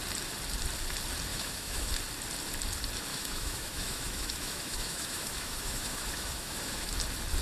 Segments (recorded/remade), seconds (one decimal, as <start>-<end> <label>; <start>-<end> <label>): 0.0-1.3 recorded; 1.3-1.9 remade; 1.9-3.1 recorded; 3.1-6.9 remade; 6.9-7.4 recorded